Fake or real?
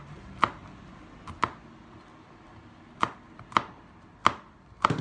real